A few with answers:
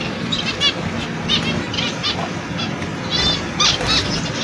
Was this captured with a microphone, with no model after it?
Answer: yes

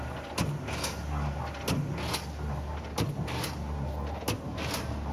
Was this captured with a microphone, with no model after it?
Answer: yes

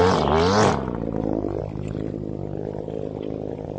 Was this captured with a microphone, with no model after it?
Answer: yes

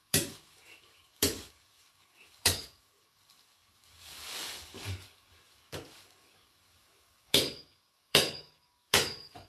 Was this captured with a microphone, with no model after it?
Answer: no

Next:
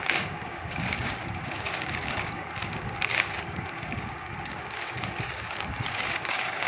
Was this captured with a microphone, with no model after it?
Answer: no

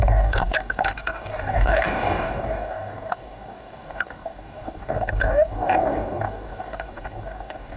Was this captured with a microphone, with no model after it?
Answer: no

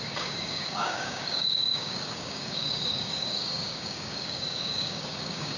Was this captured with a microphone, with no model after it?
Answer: no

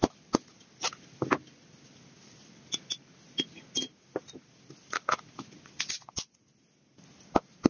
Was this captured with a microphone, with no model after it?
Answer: yes